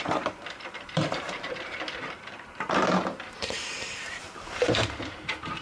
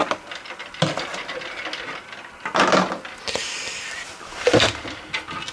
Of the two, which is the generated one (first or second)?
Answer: first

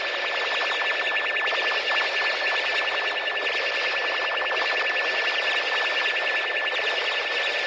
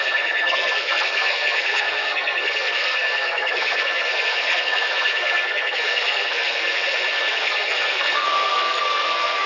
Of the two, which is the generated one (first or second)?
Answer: second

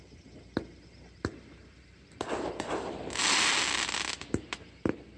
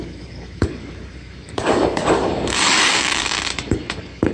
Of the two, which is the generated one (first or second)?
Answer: second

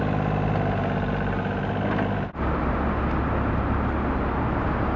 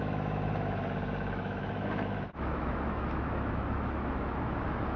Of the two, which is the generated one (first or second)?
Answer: second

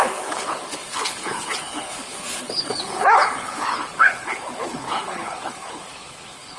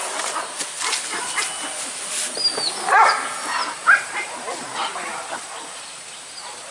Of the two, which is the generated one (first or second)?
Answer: first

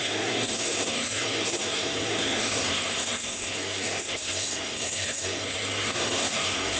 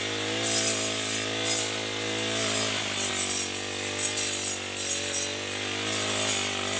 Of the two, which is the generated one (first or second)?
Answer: first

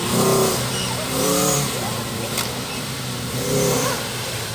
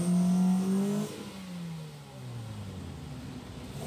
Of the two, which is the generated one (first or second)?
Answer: first